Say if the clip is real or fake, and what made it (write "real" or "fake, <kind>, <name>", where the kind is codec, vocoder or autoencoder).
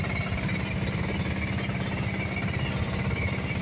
real